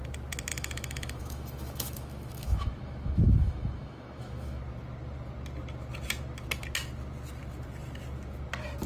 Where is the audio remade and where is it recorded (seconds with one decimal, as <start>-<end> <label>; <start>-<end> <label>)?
0.0-0.5 recorded; 0.5-4.6 remade; 4.6-8.9 recorded